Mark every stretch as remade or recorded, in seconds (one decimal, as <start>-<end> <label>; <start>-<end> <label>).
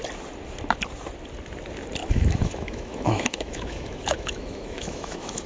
0.0-2.0 recorded; 2.0-5.5 remade